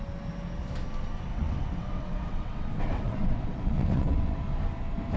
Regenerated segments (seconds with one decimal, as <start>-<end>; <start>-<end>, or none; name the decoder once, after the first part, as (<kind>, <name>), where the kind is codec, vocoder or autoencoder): 1.3-4.4 (vocoder, WaveNeXt)